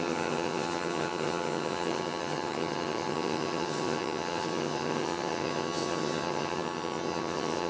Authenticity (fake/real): fake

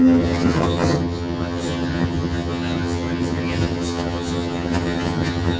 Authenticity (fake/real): fake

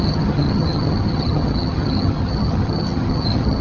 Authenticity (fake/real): fake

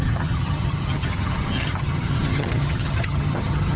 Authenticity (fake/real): fake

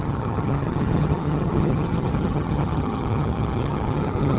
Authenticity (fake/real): fake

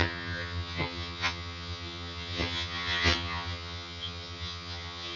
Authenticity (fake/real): fake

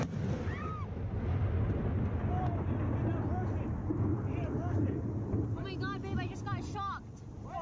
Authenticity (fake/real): real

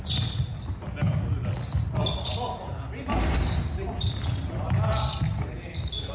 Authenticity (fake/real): real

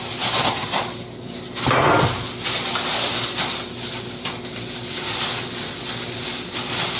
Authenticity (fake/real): real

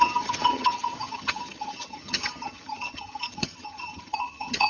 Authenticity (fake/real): fake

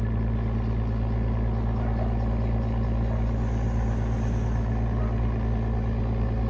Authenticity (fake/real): real